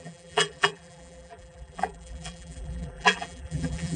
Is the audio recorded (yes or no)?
no